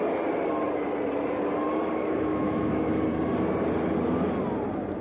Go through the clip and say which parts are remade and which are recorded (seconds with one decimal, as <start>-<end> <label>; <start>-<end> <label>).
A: 0.0-2.0 recorded; 2.0-3.0 remade; 3.0-5.0 recorded